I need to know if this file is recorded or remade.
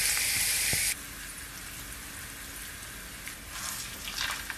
recorded